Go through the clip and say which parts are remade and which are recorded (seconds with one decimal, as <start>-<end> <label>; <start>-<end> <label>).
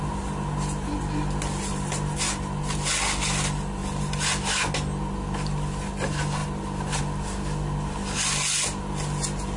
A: 0.0-9.6 recorded